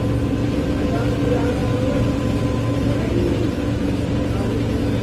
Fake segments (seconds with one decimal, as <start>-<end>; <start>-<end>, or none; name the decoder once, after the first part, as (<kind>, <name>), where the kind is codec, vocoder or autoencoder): none